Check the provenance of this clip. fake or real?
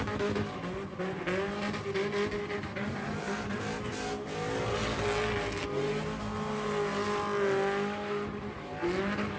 real